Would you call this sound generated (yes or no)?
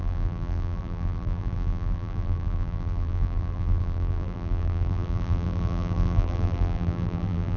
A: yes